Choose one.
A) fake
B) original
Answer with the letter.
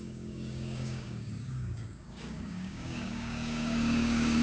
A